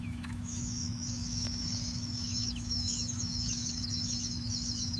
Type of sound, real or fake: fake